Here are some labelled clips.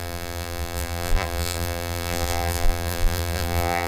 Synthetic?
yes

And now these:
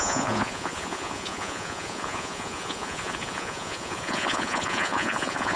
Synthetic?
yes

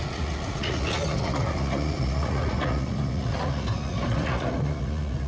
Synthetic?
yes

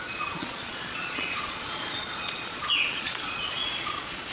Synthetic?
yes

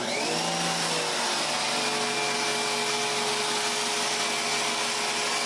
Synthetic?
no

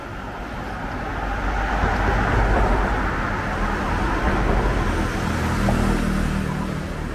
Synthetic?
no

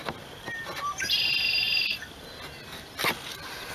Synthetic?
no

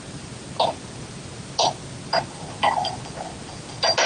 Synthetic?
no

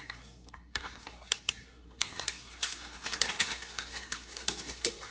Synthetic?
yes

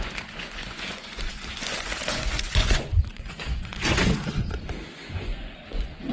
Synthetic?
yes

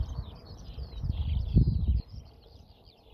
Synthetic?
no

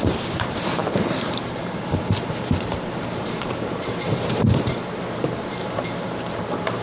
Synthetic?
yes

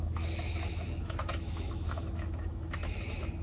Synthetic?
yes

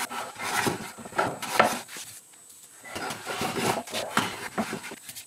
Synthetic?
yes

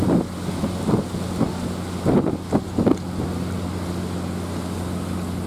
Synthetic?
no